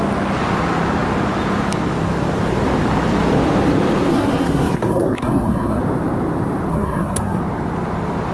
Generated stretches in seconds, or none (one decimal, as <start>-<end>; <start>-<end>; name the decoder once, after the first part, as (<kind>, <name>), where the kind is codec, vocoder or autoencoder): 4.1-5.8 (codec, SNAC); 6.7-7.4